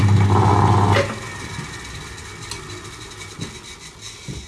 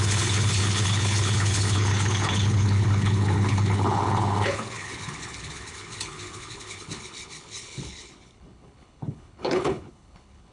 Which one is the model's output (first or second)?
second